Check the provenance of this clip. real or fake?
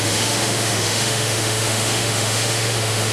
fake